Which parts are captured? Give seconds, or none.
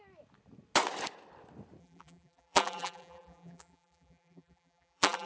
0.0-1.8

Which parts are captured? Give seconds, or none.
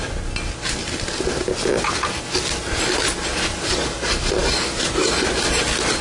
0.0-6.0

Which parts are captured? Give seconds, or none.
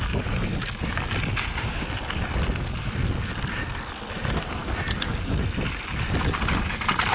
0.0-7.1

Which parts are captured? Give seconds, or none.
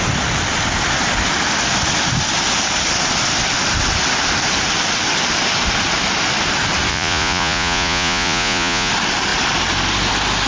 0.0-6.9; 8.9-10.5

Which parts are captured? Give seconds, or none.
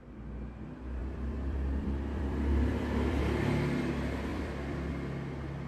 0.0-1.0; 3.2-4.3; 4.9-5.7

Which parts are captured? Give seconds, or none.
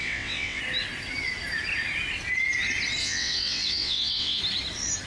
0.6-3.0; 4.4-5.1